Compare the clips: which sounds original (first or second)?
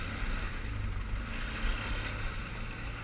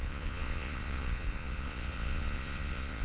first